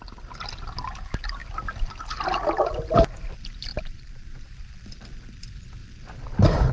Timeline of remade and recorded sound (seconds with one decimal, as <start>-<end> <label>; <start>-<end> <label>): 0.0-3.7 recorded; 3.7-4.5 remade; 4.5-6.7 recorded